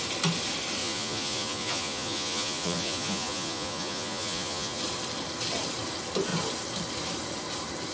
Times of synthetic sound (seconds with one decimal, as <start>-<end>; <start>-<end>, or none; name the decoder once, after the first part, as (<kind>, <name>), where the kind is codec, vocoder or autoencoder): 0.8-4.8 (vocoder, Vocos)